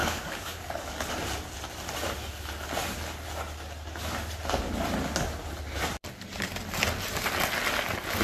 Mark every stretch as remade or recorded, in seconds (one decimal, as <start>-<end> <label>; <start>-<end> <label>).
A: 0.0-1.1 remade; 1.1-8.2 recorded